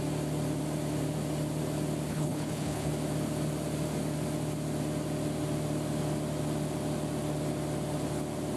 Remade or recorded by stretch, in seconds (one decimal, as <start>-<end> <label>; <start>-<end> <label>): 0.0-2.1 recorded; 2.1-2.9 remade; 2.9-8.6 recorded

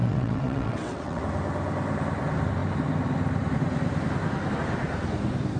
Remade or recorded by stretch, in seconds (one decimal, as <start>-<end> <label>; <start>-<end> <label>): 0.0-1.2 remade; 1.2-5.6 recorded

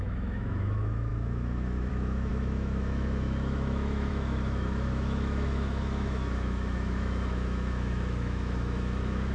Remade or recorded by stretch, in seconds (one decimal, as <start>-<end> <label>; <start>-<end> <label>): 0.0-9.3 remade

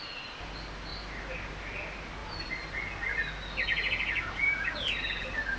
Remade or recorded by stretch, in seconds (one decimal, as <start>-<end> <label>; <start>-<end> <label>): 0.0-5.6 recorded

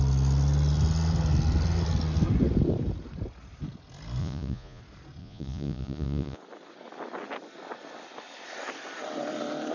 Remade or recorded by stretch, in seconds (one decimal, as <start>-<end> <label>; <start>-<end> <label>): 0.0-4.2 recorded; 4.2-4.8 remade; 4.8-5.2 recorded; 5.2-6.4 remade; 6.4-9.7 recorded